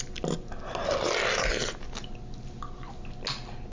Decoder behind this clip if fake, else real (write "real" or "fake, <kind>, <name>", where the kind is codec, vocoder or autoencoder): real